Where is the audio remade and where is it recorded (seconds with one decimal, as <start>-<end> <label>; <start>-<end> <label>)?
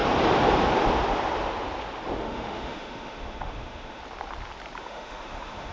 0.0-2.2 recorded; 2.2-4.0 remade; 4.0-4.8 recorded; 4.8-5.7 remade